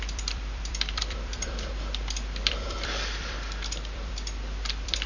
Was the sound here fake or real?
fake